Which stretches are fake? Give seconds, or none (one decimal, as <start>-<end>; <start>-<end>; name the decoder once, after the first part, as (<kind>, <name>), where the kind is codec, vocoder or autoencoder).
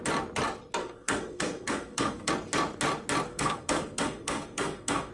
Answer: 0.8-2.3 (codec, SNAC); 3.3-5.1